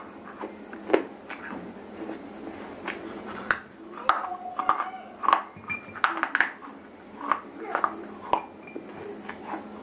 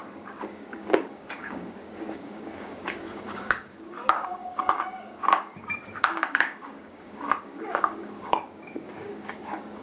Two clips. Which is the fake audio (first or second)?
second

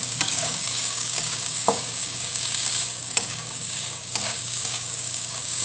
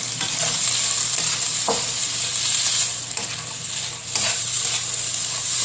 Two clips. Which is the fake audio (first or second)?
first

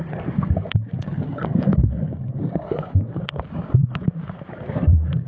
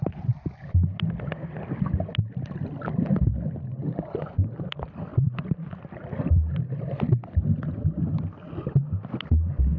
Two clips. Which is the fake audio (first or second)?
first